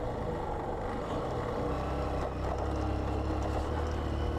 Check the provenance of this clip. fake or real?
real